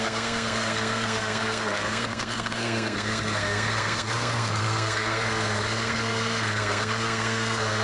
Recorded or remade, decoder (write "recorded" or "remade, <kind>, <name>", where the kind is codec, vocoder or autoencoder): remade, codec, SNAC